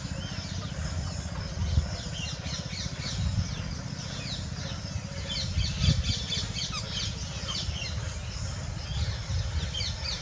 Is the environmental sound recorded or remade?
recorded